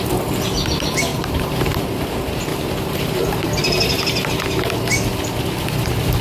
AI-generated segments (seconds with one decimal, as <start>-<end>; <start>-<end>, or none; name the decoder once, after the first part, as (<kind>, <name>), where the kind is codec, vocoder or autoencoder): 1.1-1.8 (vocoder, BigVGAN v2); 2.5-3.6